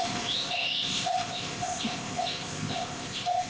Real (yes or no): no